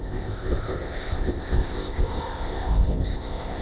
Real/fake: fake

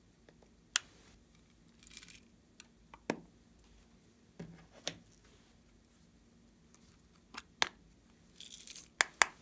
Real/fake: real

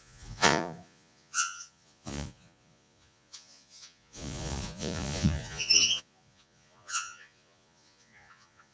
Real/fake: fake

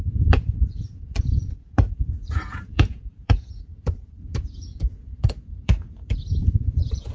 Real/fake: fake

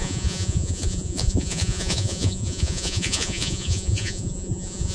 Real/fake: fake